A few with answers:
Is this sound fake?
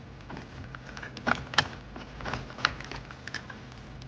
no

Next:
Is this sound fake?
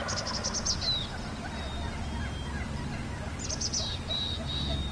no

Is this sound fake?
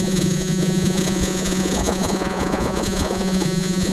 yes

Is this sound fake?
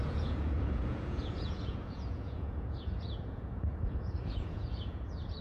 yes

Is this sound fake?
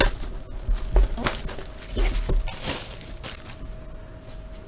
no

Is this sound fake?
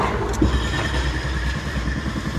no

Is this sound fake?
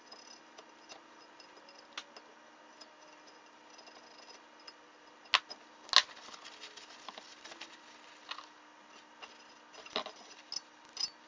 no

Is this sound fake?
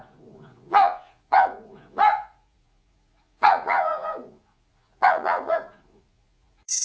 yes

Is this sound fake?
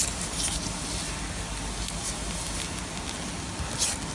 no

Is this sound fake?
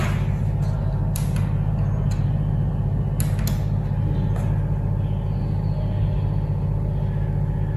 no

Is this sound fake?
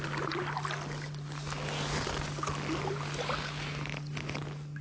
no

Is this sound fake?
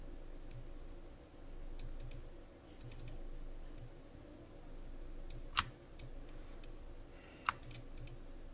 no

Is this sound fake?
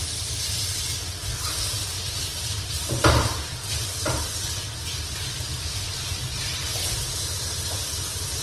no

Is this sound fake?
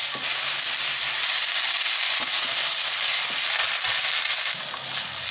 no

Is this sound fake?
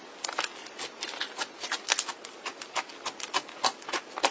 no